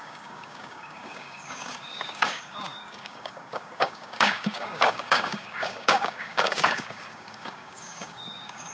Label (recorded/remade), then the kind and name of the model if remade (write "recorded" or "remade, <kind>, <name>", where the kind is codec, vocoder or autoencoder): remade, codec, DAC